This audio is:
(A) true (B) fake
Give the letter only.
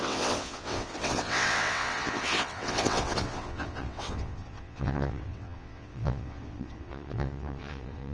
B